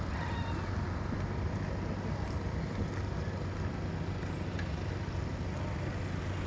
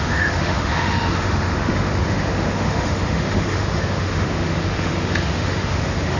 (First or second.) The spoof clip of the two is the second